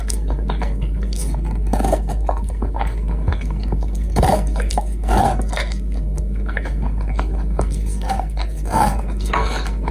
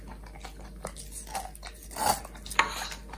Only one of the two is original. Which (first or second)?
second